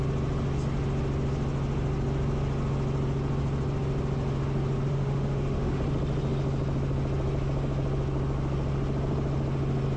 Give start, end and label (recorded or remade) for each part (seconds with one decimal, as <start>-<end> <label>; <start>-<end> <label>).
0.0-4.9 recorded; 4.9-5.8 remade; 5.8-10.0 recorded

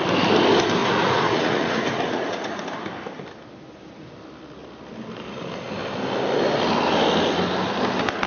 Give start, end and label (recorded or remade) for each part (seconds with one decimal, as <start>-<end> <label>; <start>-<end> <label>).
0.0-0.8 recorded; 0.8-2.6 remade; 2.6-8.3 recorded

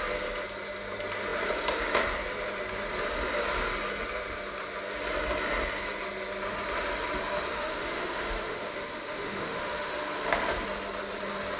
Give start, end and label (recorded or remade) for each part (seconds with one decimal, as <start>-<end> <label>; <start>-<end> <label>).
0.0-7.5 recorded; 7.5-9.9 remade; 9.9-11.6 recorded